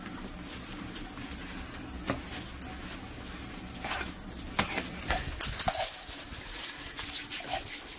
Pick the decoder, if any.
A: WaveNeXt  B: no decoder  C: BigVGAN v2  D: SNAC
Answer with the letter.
B